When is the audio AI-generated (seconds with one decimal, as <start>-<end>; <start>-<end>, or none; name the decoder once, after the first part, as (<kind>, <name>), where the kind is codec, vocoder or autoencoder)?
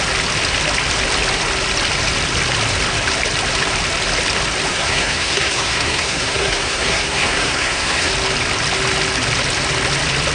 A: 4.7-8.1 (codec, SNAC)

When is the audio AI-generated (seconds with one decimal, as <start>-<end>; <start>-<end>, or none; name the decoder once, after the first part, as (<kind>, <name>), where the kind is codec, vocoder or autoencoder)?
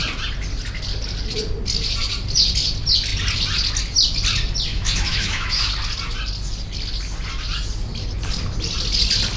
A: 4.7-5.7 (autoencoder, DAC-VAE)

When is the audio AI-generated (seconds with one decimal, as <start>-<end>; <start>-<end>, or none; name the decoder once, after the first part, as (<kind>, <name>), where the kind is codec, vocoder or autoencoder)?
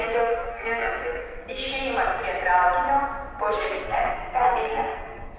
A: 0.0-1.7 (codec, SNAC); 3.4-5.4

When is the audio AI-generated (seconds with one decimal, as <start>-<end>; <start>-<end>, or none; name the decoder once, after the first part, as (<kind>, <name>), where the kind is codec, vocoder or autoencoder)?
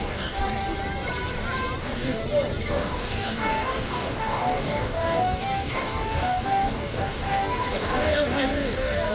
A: 0.0-0.4 (codec, DAC); 1.8-2.2; 2.7-9.1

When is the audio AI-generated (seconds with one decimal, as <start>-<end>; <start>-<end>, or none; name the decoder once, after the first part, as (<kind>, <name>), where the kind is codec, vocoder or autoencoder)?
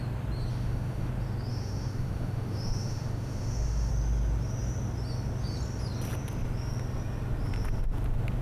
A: 0.5-1.1 (autoencoder, DAC-VAE); 1.5-3.9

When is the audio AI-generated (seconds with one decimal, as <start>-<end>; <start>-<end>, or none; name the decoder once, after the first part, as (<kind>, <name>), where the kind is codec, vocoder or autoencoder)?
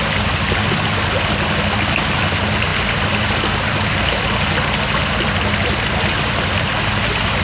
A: none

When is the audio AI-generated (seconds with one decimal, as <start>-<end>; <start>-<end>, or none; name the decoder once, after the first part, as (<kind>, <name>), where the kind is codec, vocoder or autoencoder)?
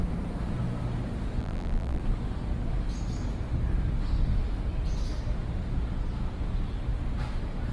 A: 1.4-2.0 (vocoder, BigVGAN v2)